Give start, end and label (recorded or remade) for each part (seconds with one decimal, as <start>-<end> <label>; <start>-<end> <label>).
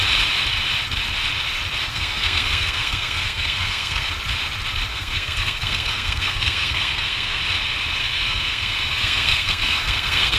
0.0-1.9 recorded; 1.9-4.1 remade; 4.1-4.9 recorded; 4.9-7.4 remade; 7.4-8.0 recorded; 8.0-10.4 remade